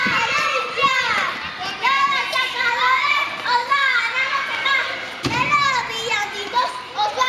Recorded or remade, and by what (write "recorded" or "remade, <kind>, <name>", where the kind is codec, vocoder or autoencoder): remade, vocoder, BigVGAN v2